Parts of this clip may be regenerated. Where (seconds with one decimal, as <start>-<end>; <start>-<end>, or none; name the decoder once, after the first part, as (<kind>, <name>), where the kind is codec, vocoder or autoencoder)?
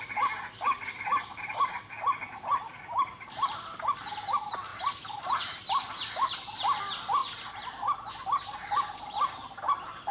none